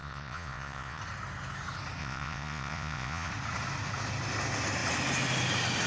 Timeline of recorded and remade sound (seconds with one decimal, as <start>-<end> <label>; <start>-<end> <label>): 0.0-1.0 remade; 1.0-2.0 recorded; 2.0-3.3 remade; 3.3-5.9 recorded